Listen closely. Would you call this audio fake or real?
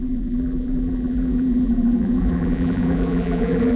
fake